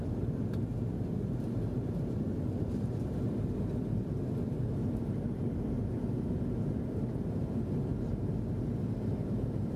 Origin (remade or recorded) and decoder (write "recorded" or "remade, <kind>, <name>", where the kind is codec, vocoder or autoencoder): recorded